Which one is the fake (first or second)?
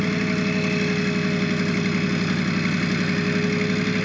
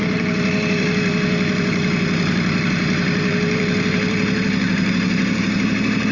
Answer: second